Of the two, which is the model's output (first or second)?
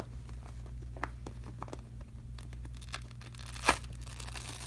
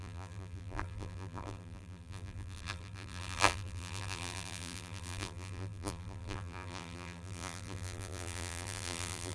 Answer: second